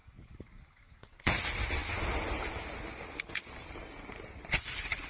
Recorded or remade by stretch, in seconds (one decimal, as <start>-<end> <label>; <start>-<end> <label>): 0.0-1.2 remade; 1.2-5.1 recorded